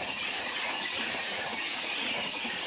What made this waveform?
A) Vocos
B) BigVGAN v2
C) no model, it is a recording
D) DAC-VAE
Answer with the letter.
A